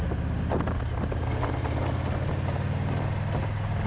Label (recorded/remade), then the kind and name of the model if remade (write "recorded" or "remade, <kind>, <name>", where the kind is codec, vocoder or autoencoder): recorded